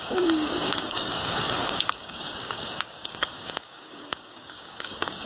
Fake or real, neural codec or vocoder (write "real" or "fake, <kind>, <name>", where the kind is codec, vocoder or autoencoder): fake, codec, DAC